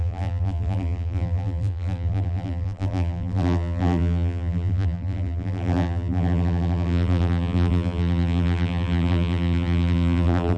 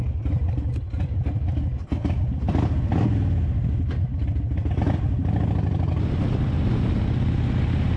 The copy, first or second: first